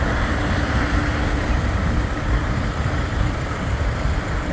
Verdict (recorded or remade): recorded